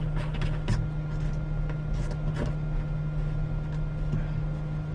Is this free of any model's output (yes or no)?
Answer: yes